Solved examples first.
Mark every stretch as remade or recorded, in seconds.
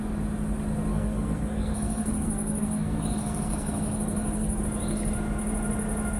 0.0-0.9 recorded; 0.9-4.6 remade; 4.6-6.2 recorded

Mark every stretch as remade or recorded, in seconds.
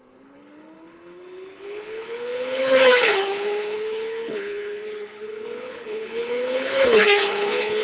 0.0-7.8 remade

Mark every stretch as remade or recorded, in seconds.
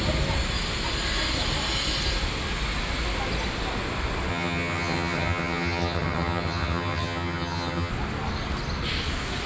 0.0-4.3 recorded; 4.3-7.9 remade; 7.9-9.5 recorded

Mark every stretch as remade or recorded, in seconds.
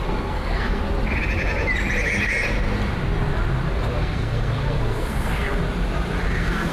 0.0-0.8 remade; 0.8-3.9 recorded; 3.9-5.6 remade; 5.6-6.2 recorded; 6.2-6.7 remade